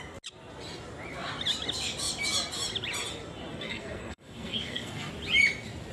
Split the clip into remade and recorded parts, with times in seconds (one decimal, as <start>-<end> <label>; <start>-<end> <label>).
0.0-3.5 recorded; 3.5-5.1 remade; 5.1-5.9 recorded